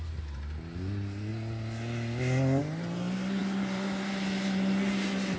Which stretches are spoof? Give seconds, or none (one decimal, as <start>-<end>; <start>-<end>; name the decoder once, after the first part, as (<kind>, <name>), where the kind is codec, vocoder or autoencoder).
none